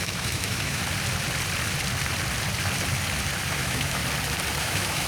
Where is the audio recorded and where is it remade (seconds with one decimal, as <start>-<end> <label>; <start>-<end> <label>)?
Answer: 0.0-0.8 remade; 0.8-3.5 recorded; 3.5-4.0 remade; 4.0-4.6 recorded; 4.6-5.1 remade